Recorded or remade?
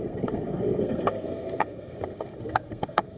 remade